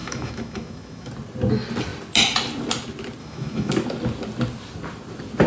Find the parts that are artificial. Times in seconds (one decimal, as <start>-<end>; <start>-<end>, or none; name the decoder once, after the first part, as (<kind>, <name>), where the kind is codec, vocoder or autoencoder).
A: 0.0-1.1 (autoencoder, DAC-VAE); 3.2-3.7